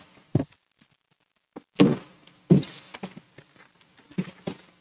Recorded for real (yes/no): yes